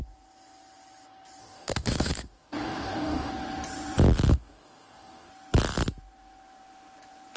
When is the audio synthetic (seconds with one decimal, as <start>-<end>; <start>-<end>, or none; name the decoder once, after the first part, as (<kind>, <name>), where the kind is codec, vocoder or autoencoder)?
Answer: 1.4-3.3 (codec, DAC); 4.3-5.3

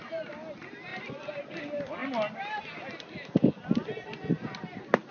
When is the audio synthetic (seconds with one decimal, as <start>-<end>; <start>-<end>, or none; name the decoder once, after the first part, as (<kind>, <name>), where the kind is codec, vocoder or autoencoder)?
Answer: none

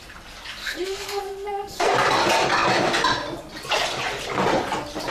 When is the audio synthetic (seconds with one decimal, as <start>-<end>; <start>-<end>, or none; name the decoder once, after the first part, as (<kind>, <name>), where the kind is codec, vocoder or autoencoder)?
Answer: 0.6-1.9 (codec, SNAC)

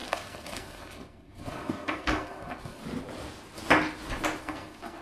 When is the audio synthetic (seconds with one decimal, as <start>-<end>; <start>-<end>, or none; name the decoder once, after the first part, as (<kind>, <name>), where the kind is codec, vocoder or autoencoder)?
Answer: 0.0-2.8 (codec, SNAC); 4.4-5.0